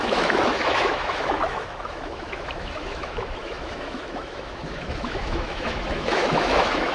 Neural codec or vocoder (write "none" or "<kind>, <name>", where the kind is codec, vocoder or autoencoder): autoencoder, DAC-VAE